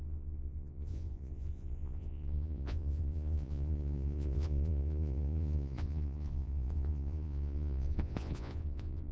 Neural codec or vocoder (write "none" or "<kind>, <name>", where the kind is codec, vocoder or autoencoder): vocoder, Vocos